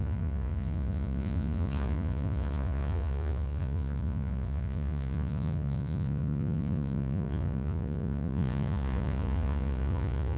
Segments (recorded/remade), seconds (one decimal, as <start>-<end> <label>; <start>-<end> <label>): 0.0-10.4 remade

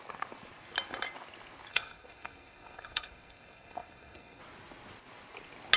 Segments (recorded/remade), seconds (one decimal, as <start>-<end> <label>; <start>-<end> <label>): 0.0-1.7 recorded; 1.7-4.4 remade; 4.4-5.8 recorded

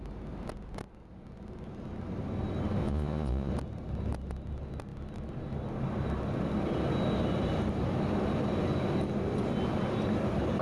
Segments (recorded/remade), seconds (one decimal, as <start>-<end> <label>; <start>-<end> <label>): 0.0-2.8 recorded; 2.8-3.5 remade; 3.5-10.6 recorded

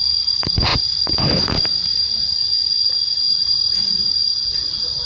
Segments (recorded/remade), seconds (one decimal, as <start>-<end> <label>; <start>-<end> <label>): 0.0-5.1 remade

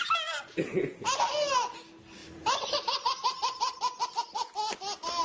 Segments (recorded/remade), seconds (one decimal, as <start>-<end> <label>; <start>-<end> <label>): 0.0-2.2 recorded; 2.2-4.1 remade; 4.1-5.2 recorded

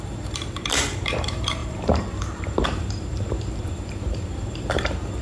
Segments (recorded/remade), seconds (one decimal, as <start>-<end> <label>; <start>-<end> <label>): 0.0-5.2 remade

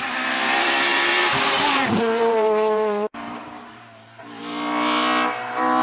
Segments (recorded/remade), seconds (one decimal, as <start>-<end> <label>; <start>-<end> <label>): 0.0-0.9 recorded; 0.9-4.4 remade; 4.4-5.8 recorded